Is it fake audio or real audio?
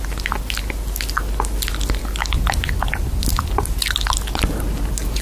real